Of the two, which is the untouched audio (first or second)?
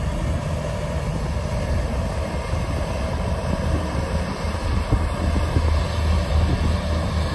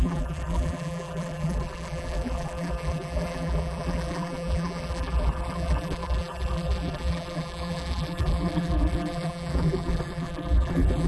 first